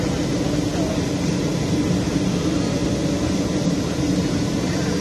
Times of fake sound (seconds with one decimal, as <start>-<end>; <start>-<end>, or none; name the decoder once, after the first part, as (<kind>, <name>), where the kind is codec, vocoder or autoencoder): none